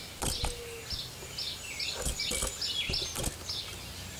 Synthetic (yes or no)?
no